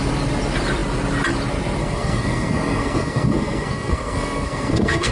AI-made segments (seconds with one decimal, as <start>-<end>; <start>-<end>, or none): 1.8-5.1